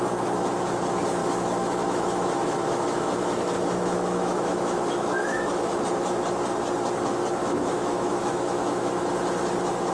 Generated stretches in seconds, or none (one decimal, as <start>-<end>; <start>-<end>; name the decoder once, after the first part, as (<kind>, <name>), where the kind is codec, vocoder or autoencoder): 1.2-5.8 (autoencoder, DAC-VAE); 7.4-9.0